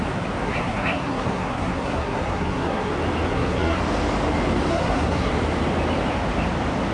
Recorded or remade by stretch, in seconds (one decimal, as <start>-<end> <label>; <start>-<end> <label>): 0.0-0.4 recorded; 0.4-2.9 remade; 2.9-3.3 recorded; 3.3-3.8 remade; 3.8-4.7 recorded; 4.7-5.3 remade; 5.3-6.9 recorded